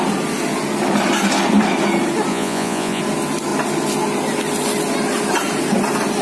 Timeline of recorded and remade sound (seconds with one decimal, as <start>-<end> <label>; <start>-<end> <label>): 0.0-2.3 recorded; 2.3-3.0 remade; 3.0-6.2 recorded